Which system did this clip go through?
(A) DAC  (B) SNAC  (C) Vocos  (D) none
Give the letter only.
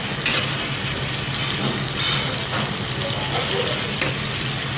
D